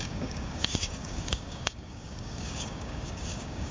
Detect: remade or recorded remade